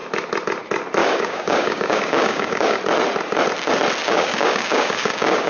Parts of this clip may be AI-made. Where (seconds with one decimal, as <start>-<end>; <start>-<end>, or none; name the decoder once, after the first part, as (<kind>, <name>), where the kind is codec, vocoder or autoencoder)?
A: 1.0-2.8 (codec, DAC); 4.0-5.5